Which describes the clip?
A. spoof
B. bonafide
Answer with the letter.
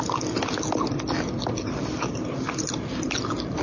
B